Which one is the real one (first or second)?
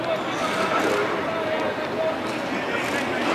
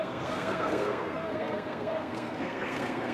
first